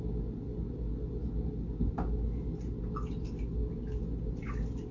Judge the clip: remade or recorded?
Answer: recorded